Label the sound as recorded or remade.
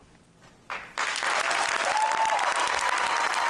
recorded